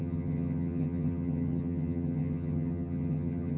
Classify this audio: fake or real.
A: fake